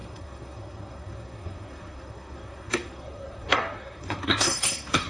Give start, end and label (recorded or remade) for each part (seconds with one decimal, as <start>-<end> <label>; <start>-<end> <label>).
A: 0.0-5.1 remade

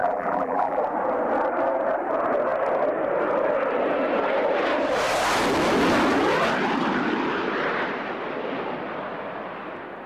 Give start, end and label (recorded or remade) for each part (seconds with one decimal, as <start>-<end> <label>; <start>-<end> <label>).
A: 0.0-0.8 remade; 0.8-10.1 recorded

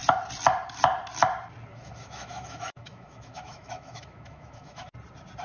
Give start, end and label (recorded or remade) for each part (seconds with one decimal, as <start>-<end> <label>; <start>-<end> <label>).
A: 0.0-1.7 recorded; 1.7-4.9 remade; 4.9-5.4 recorded

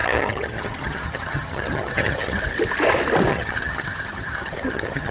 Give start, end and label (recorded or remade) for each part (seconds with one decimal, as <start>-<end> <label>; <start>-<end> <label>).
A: 0.0-2.4 remade; 2.4-3.3 recorded; 3.3-5.1 remade

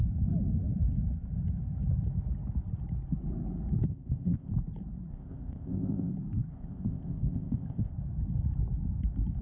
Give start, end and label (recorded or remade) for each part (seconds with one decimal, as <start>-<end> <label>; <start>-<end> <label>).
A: 0.0-3.9 recorded; 3.9-4.5 remade; 4.5-5.1 recorded; 5.1-6.1 remade; 6.1-6.5 recorded; 6.5-7.9 remade; 7.9-9.4 recorded

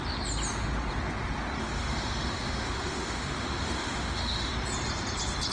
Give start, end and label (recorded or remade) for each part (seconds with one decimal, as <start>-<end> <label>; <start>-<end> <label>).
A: 0.0-1.6 recorded; 1.6-4.5 remade; 4.5-5.5 recorded

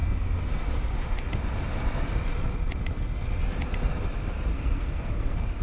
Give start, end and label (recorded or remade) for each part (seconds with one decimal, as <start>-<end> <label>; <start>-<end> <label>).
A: 0.0-4.5 recorded; 4.5-5.6 remade